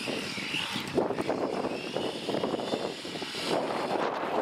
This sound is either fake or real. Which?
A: fake